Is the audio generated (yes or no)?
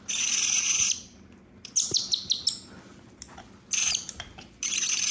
no